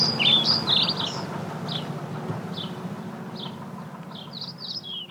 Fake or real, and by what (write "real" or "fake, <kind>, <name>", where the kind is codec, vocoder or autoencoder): real